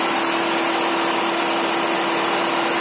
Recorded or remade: recorded